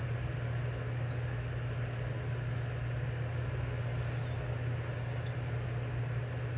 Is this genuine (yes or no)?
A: yes